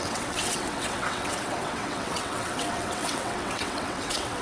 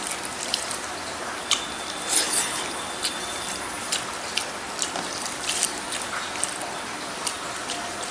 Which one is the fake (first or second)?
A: first